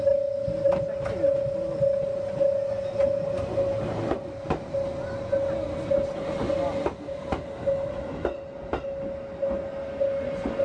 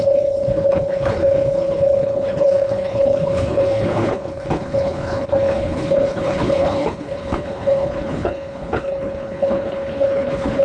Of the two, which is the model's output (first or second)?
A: second